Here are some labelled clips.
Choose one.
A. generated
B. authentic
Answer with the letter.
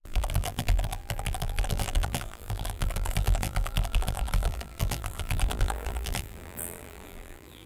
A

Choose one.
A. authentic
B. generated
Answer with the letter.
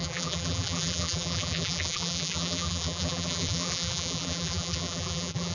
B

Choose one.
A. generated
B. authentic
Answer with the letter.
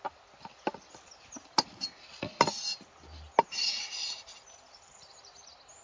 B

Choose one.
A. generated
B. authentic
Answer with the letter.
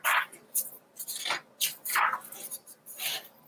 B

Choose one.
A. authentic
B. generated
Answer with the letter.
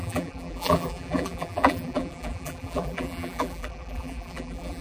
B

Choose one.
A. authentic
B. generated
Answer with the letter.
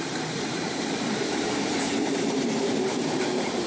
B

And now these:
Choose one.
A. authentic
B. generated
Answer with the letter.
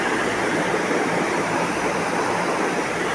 B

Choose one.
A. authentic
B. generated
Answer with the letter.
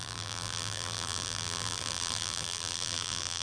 B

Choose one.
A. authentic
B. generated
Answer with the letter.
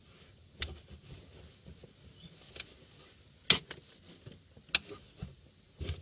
A